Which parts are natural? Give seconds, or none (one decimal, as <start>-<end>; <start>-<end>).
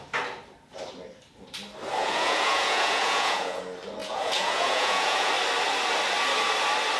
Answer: 0.0-2.0; 3.6-4.0; 5.3-7.0